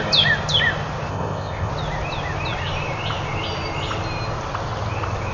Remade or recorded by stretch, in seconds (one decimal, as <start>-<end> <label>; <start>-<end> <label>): 0.0-1.1 recorded; 1.1-1.7 remade; 1.7-5.3 recorded